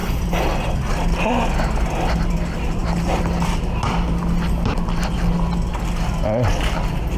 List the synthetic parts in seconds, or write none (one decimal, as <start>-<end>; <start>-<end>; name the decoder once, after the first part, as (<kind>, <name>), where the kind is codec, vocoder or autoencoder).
0.0-0.9 (vocoder, BigVGAN v2)